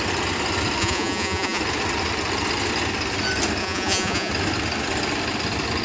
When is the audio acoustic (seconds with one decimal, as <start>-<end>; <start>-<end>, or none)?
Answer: 0.0-0.8; 1.6-3.6; 4.3-5.8